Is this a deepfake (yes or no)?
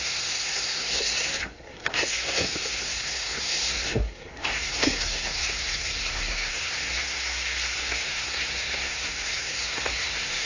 yes